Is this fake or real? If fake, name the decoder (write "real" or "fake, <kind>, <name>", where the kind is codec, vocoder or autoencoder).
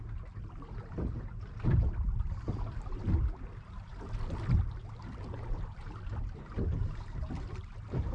real